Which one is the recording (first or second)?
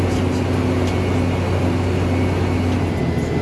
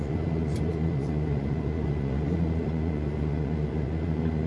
first